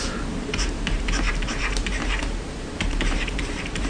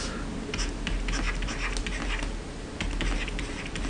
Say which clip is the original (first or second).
second